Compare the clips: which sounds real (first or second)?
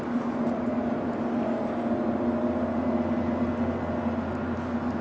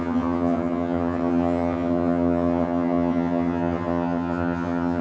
first